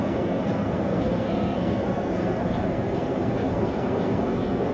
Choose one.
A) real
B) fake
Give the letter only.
B